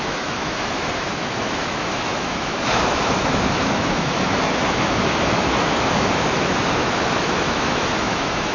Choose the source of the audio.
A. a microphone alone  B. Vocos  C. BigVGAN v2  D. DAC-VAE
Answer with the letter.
D